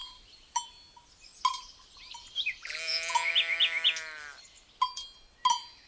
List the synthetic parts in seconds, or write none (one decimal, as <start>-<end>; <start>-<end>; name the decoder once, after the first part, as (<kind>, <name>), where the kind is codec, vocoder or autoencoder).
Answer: none